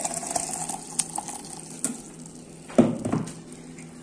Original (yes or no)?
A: yes